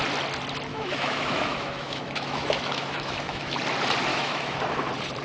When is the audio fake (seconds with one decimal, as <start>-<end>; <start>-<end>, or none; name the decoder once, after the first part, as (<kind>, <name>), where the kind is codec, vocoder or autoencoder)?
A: 0.7-3.6 (autoencoder, DAC-VAE); 4.1-4.6

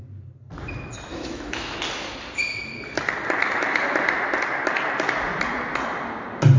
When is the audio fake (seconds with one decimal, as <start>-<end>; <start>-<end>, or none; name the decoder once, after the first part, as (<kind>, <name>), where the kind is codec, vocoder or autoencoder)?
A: 1.1-1.8 (autoencoder, DAC-VAE)